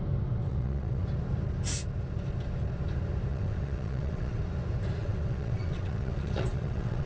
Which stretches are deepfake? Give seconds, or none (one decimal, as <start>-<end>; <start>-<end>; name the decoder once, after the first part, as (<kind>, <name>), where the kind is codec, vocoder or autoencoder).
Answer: 0.5-1.0 (vocoder, WaveNeXt); 3.3-4.4; 5.0-7.1